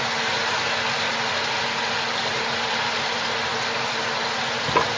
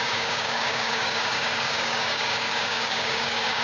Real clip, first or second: first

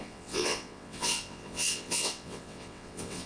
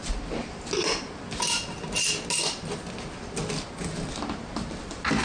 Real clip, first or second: second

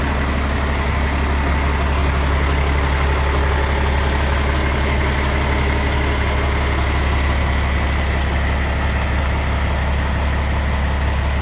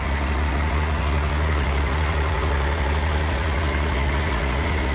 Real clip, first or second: first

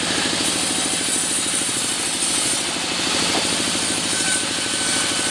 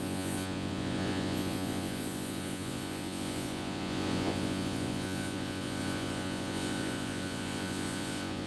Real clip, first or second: first